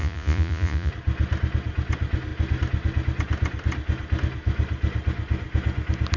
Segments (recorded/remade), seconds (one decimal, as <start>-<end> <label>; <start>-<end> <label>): 0.0-0.9 remade; 0.9-6.2 recorded